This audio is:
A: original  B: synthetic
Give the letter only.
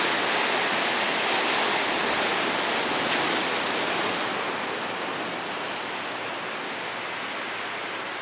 A